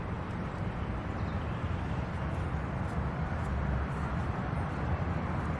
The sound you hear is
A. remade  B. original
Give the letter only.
B